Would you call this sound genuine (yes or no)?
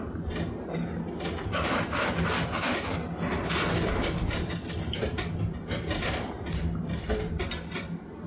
yes